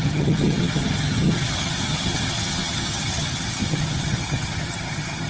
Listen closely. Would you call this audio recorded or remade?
remade